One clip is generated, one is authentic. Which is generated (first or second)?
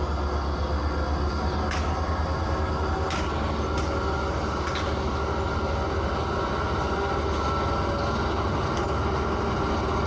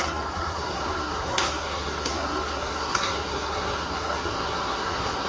second